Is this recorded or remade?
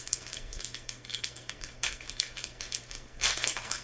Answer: remade